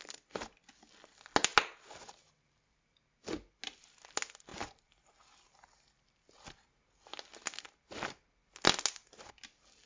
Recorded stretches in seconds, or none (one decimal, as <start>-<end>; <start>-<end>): 0.0-9.9